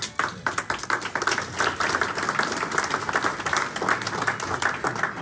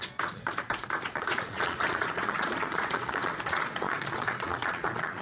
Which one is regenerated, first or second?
second